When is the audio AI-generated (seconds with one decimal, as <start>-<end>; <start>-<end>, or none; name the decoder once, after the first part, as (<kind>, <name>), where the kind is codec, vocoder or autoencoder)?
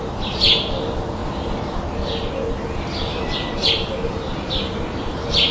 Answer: 1.2-1.8 (vocoder, BigVGAN v2); 3.1-3.7